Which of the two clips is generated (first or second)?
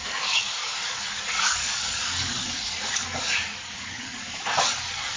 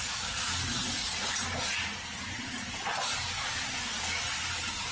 first